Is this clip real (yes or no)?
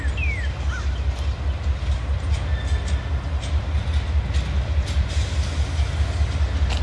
yes